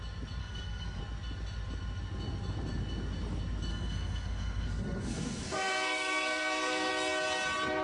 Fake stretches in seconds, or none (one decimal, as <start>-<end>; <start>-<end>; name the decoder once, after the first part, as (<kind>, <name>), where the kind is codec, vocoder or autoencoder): 0.4-1.0 (codec, SNAC); 3.7-6.9